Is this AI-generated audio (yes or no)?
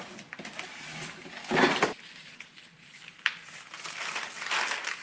no